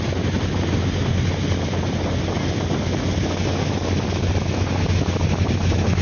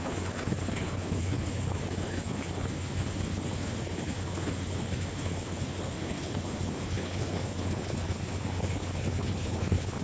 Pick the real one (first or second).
first